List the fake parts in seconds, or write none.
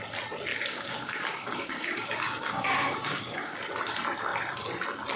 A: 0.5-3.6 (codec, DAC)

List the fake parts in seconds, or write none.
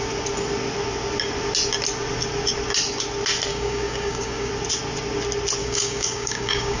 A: 3.5-4.5 (codec, DAC); 5.6-6.8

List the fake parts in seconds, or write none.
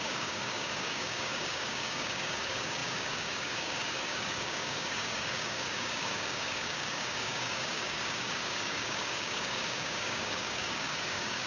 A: 0.0-11.5 (codec, DAC)